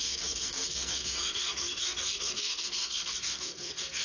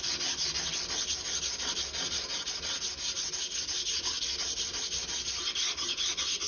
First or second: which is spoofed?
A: first